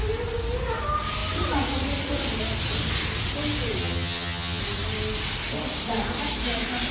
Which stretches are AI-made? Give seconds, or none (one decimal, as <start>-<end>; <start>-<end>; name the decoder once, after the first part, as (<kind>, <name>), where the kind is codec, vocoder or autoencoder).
3.8-4.6 (vocoder, HiFi-GAN)